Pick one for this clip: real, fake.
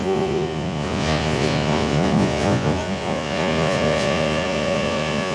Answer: fake